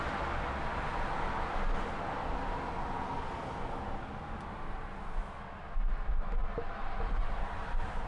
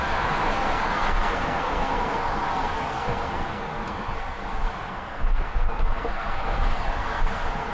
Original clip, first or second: first